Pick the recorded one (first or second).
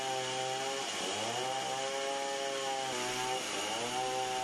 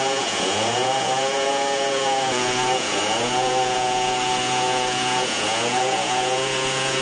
first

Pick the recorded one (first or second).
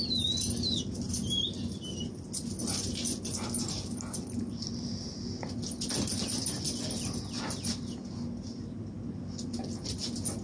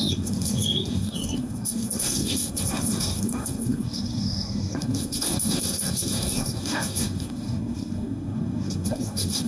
first